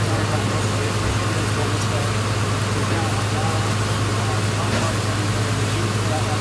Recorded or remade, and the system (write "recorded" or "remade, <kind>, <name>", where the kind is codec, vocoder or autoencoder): recorded